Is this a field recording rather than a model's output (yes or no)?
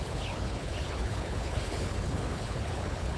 no